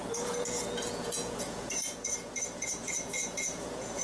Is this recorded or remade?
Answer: remade